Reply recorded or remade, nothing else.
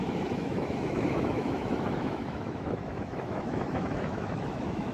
remade